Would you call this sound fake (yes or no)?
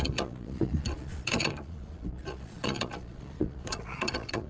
yes